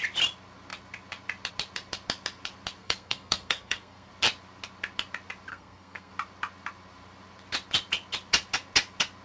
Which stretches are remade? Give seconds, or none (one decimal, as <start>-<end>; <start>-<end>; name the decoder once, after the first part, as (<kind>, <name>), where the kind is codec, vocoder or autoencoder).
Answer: 2.8-4.1 (codec, SNAC); 5.5-6.1